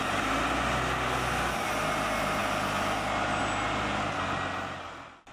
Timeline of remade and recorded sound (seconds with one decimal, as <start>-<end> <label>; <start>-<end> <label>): 0.0-5.3 recorded